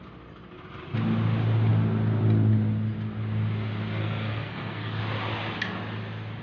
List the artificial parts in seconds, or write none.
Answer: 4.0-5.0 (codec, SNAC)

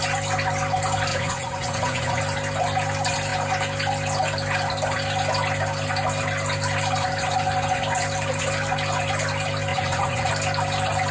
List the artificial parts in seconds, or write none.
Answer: 1.1-2.2 (vocoder, Vocos); 9.7-10.3

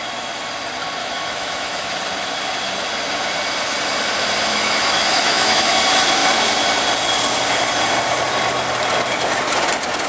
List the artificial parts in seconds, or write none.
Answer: 1.0-1.9 (autoencoder, DAC-VAE); 4.5-5.7

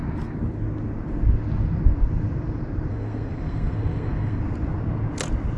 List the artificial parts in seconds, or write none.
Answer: 2.9-4.4 (codec, SNAC)

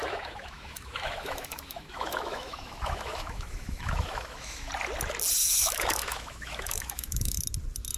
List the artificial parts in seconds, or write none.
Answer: 0.0-4.7 (autoencoder, DAC-VAE); 5.4-7.4

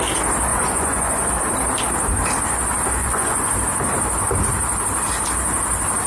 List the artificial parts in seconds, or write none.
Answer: 0.5-1.3 (vocoder, Vocos); 3.0-3.5

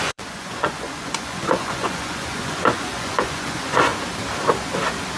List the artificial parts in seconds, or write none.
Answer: 0.0-3.9 (vocoder, Vocos)